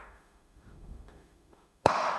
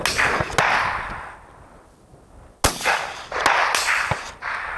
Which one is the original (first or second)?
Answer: second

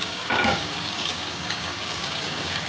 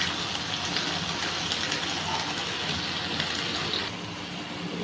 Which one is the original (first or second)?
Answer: second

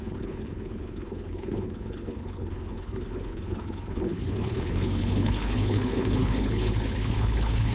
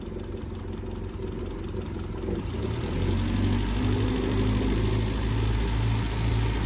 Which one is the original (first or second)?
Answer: second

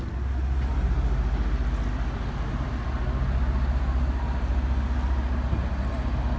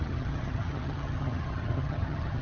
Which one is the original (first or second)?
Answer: first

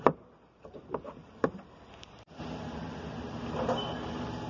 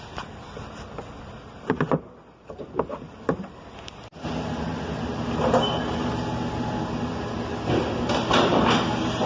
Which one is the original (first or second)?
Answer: second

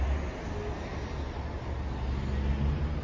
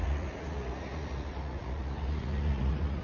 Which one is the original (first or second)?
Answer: first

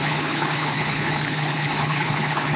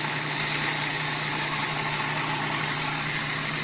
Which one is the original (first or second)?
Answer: second